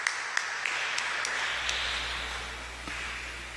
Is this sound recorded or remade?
recorded